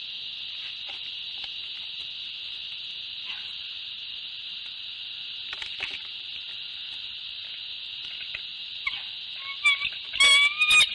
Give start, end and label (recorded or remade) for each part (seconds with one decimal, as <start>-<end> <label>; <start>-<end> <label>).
0.0-10.9 recorded